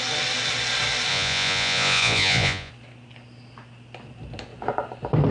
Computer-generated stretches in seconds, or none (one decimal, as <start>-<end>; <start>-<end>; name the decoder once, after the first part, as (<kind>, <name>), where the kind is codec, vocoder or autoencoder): 1.1-2.7 (vocoder, Vocos)